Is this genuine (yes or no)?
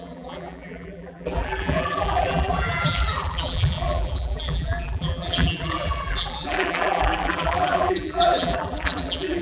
no